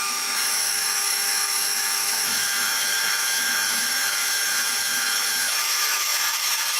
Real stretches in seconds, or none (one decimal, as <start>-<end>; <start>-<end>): none